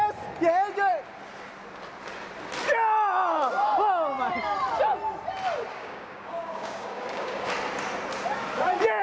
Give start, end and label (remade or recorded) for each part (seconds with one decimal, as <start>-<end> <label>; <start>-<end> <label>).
0.0-5.7 recorded; 5.7-7.5 remade; 7.5-9.0 recorded